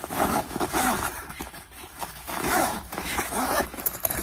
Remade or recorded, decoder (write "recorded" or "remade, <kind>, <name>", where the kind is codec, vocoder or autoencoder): remade, autoencoder, DAC-VAE